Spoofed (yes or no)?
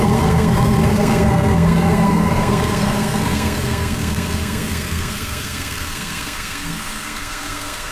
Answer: yes